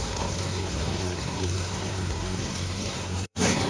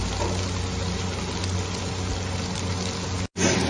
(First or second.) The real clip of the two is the second